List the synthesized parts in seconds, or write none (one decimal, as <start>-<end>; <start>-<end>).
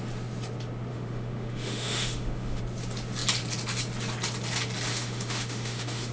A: 0.9-2.6; 4.9-6.1